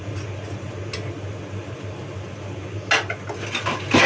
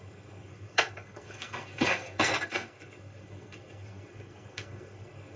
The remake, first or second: second